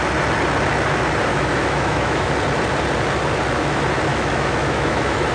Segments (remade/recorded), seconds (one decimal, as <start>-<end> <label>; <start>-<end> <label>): 0.0-1.3 recorded; 1.3-2.3 remade; 2.3-4.1 recorded; 4.1-5.3 remade

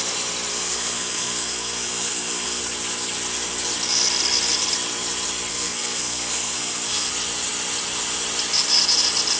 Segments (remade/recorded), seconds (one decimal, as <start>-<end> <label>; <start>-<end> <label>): 0.0-0.5 recorded; 0.5-2.6 remade; 2.6-5.5 recorded; 5.5-7.1 remade; 7.1-9.4 recorded

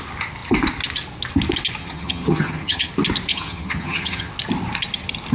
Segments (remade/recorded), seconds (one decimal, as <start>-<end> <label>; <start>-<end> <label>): 0.0-1.8 recorded; 1.8-2.9 remade; 2.9-3.3 recorded; 3.3-4.3 remade; 4.3-5.3 recorded

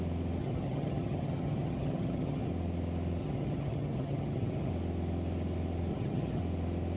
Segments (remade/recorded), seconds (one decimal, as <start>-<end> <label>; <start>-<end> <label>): 0.0-0.4 recorded; 0.4-2.5 remade; 2.5-3.2 recorded; 3.2-4.7 remade; 4.7-5.9 recorded; 5.9-6.4 remade; 6.4-7.0 recorded

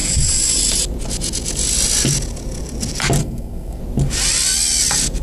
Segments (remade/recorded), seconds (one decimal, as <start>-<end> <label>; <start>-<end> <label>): 0.0-3.2 recorded; 3.2-3.8 remade; 3.8-5.2 recorded

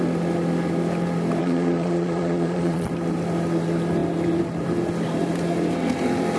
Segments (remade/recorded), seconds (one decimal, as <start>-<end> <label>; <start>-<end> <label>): 0.0-1.4 recorded; 1.4-2.9 remade; 2.9-6.4 recorded

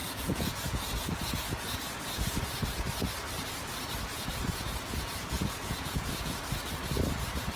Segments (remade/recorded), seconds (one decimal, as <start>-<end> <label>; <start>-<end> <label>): 0.0-2.4 remade; 2.4-4.1 recorded; 4.1-6.4 remade; 6.4-7.6 recorded